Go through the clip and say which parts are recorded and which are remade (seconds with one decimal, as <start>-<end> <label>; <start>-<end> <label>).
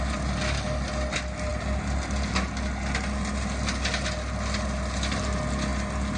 0.0-6.2 recorded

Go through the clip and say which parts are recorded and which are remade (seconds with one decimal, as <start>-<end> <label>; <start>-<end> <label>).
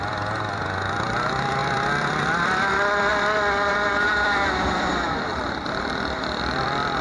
0.0-3.1 remade; 3.1-3.9 recorded; 3.9-7.0 remade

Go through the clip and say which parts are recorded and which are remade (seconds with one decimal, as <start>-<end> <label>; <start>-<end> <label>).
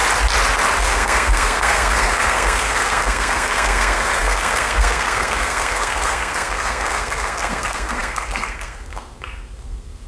0.0-0.8 recorded; 0.8-10.1 remade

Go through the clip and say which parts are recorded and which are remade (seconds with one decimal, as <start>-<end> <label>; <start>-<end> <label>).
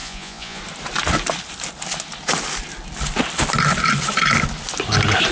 0.0-0.6 remade; 0.6-5.3 recorded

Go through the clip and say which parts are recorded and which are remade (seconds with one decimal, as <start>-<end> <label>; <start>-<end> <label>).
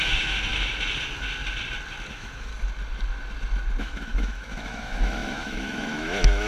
0.0-0.5 remade; 0.5-2.1 recorded; 2.1-2.5 remade; 2.5-3.8 recorded; 3.8-6.5 remade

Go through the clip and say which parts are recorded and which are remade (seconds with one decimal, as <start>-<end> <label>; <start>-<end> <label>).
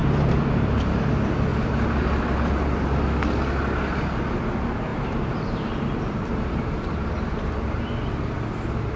0.0-1.1 remade; 1.1-1.5 recorded; 1.5-2.2 remade; 2.2-4.9 recorded; 4.9-6.7 remade; 6.7-9.0 recorded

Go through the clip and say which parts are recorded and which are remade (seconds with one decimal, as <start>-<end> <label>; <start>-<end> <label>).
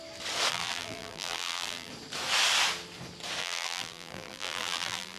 0.0-0.5 recorded; 0.5-1.9 remade; 1.9-3.4 recorded; 3.4-5.2 remade